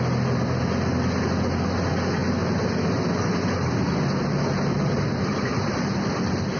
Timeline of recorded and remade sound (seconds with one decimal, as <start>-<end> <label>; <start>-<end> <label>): 0.0-5.5 recorded; 5.5-6.6 remade